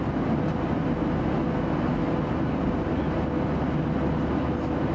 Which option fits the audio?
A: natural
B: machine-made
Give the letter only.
A